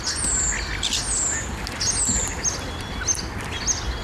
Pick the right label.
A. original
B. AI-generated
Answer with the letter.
A